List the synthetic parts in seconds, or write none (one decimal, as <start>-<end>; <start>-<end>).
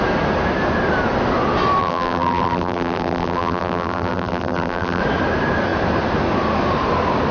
1.8-5.0